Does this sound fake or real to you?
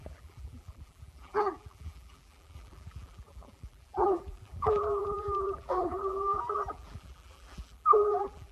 fake